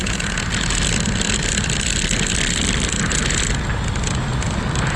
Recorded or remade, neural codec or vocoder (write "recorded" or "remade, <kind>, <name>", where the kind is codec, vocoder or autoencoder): recorded